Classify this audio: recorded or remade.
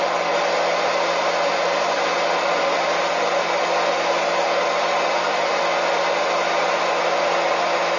recorded